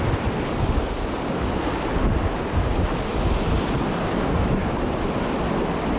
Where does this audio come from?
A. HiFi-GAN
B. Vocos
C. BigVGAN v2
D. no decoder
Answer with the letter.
D